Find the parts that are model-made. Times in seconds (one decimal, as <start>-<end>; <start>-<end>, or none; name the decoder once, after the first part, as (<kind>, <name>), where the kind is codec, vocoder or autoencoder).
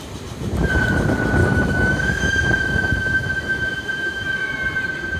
1.4-4.5 (autoencoder, DAC-VAE)